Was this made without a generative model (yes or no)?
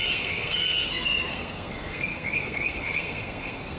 no